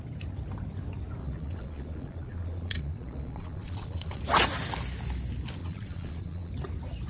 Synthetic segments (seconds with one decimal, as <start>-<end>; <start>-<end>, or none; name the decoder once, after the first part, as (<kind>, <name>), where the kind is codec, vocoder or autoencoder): 1.2-4.2 (vocoder, Vocos); 5.6-6.5